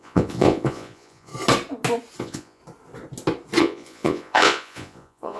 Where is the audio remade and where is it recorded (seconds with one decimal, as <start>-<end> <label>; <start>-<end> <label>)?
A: 0.0-1.3 remade; 1.3-2.2 recorded; 2.2-2.6 remade; 2.6-3.6 recorded; 3.6-5.4 remade